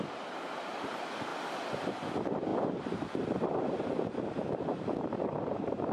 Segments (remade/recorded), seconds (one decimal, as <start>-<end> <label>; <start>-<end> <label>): 0.0-1.3 remade; 1.3-1.8 recorded; 1.8-5.9 remade